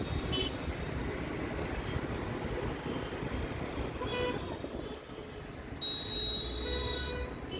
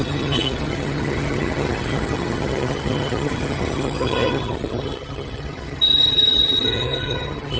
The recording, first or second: first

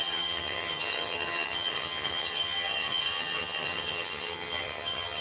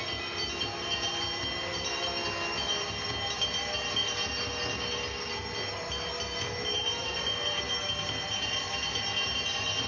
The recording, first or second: second